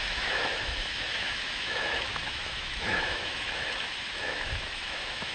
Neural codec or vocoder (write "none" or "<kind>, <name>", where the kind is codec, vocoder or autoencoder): autoencoder, DAC-VAE